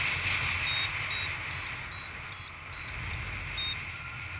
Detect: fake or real real